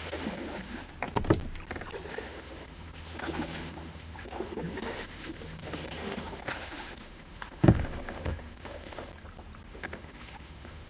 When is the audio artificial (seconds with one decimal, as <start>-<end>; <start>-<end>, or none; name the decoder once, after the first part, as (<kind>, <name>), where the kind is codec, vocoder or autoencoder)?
0.0-0.9 (autoencoder, DAC-VAE); 2.1-9.1; 9.7-10.9